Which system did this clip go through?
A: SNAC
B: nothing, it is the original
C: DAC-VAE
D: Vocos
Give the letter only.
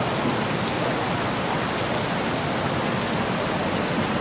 B